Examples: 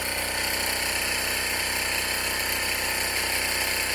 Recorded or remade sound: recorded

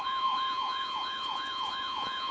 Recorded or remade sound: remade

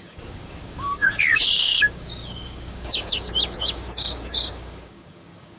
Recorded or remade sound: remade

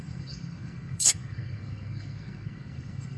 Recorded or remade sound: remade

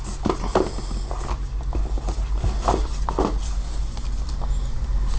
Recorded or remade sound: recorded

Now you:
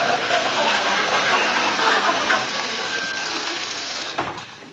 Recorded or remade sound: remade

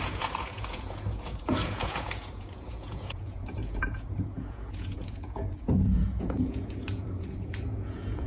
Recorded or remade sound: remade